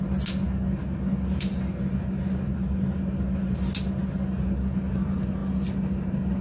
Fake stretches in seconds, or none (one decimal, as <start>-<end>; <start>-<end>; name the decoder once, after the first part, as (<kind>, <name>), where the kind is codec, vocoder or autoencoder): none